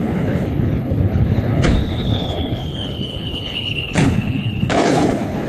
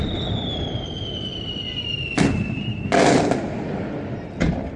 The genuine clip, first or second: second